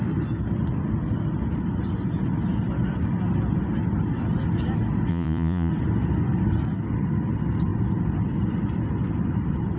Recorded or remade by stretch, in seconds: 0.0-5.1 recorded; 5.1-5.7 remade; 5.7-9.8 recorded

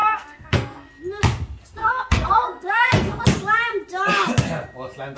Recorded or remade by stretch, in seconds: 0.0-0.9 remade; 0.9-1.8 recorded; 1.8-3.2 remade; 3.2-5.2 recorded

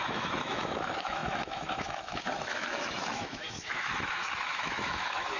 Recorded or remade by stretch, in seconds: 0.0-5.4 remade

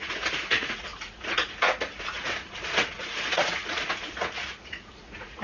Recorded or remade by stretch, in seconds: 0.0-5.4 remade

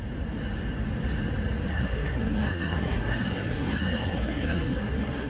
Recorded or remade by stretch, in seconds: 0.0-1.7 recorded; 1.7-5.3 remade